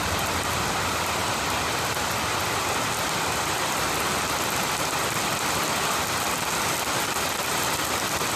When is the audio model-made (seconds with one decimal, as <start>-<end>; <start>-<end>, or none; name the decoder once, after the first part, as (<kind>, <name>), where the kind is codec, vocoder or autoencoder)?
none